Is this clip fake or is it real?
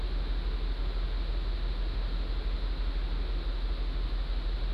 real